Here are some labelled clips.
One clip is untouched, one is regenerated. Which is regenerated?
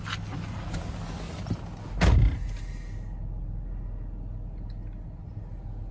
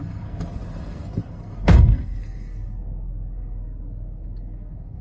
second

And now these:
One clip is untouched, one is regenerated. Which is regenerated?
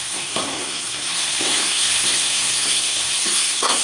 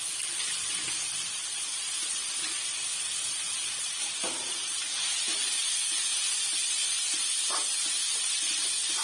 first